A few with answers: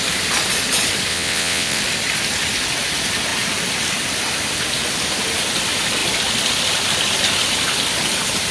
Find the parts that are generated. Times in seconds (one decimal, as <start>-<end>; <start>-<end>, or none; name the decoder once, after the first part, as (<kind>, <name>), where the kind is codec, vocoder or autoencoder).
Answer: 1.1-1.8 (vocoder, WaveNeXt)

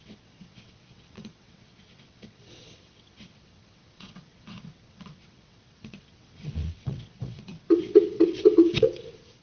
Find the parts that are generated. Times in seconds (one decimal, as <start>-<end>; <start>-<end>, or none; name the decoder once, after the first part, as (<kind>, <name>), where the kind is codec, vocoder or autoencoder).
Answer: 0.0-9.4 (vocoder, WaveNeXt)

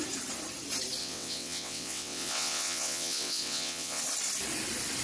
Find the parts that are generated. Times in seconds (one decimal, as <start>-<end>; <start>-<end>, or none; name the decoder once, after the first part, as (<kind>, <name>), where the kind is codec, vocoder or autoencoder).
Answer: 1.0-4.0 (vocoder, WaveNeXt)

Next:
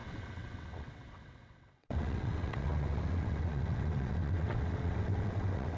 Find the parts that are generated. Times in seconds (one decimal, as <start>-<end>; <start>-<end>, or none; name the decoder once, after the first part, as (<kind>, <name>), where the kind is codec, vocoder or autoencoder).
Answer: 0.0-5.8 (vocoder, WaveNeXt)

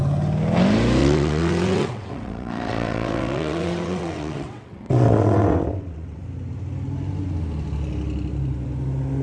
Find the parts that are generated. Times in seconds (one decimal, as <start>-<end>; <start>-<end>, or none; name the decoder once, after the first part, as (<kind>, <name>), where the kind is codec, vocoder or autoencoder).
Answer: 1.0-6.2 (vocoder, WaveNeXt)